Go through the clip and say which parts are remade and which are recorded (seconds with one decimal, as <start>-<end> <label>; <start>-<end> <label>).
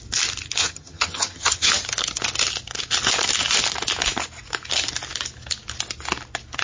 0.0-0.6 recorded; 0.6-1.7 remade; 1.7-6.6 recorded